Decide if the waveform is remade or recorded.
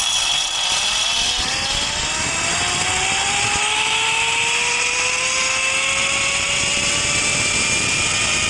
recorded